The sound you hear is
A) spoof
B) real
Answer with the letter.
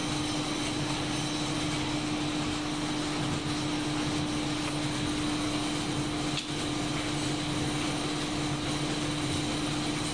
B